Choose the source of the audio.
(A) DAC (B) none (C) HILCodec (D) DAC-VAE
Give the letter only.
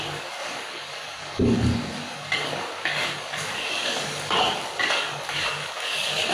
A